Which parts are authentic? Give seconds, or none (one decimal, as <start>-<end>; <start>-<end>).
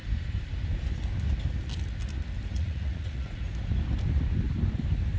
0.0-2.5; 3.4-5.2